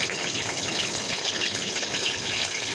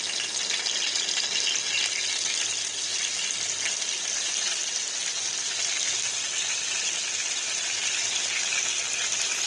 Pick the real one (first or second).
second